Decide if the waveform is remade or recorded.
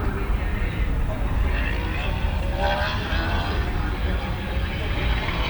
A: remade